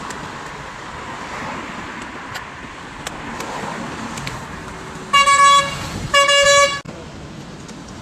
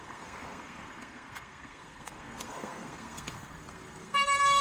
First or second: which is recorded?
first